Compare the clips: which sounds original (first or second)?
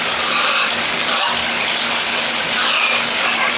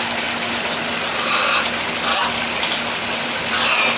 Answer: second